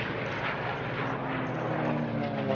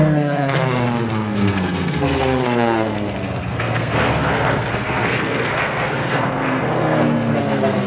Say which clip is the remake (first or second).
second